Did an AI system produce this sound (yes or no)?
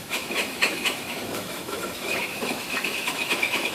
yes